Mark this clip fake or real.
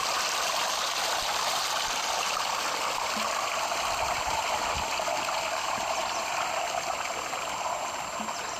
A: real